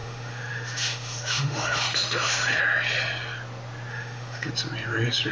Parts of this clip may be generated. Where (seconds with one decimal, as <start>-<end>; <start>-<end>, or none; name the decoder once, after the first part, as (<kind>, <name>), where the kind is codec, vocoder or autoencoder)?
0.0-2.6 (autoencoder, DAC-VAE); 3.9-4.5